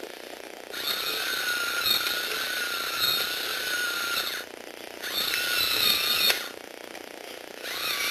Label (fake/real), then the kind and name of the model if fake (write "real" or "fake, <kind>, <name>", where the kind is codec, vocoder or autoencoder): real